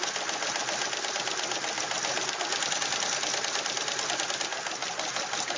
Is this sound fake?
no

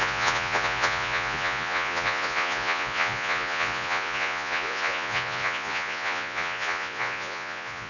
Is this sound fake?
yes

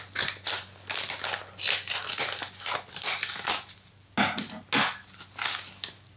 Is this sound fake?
no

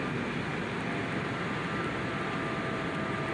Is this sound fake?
no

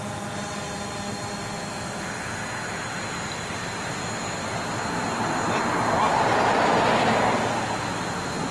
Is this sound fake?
no